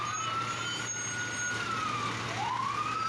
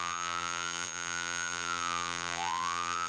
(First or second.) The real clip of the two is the first